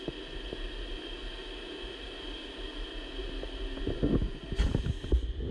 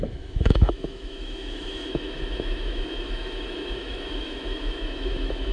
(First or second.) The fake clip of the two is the second